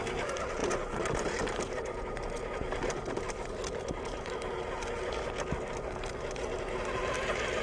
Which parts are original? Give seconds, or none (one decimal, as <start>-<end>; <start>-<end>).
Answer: 0.0-0.6; 4.3-7.6